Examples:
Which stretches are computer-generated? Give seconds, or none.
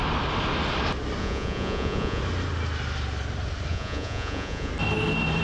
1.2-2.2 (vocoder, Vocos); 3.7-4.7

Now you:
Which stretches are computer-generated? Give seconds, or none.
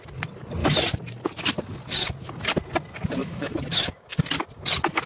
3.2-4.1 (autoencoder, DAC-VAE)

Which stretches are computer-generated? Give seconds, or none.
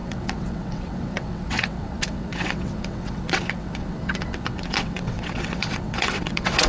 0.0-6.7 (vocoder, WaveNeXt)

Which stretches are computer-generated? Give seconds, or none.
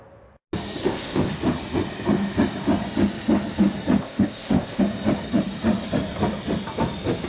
0.8-1.3 (codec, ZipCodec); 4.0-4.8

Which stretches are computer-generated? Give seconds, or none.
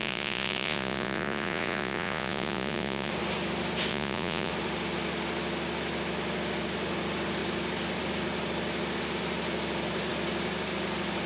0.0-3.1 (vocoder, Vocos); 3.9-4.5